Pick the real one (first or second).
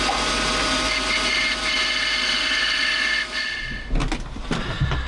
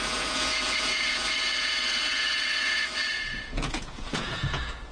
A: first